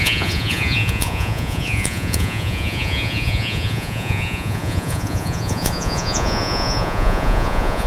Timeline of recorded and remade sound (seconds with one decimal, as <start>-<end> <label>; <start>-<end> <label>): 0.0-7.9 remade